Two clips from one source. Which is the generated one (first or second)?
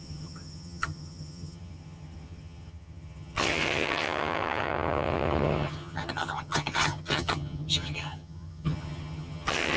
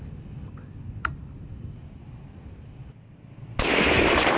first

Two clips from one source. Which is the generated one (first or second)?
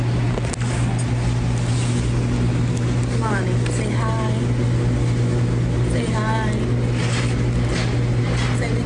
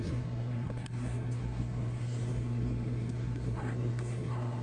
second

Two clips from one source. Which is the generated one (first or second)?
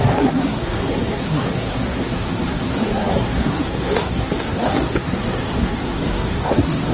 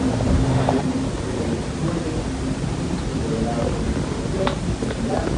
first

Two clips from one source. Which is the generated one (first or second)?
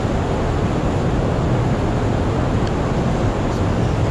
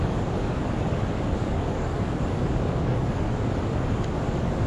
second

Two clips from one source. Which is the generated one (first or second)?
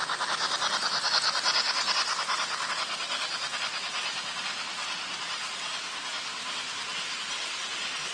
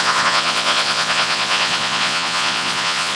second